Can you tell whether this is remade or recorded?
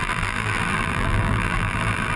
remade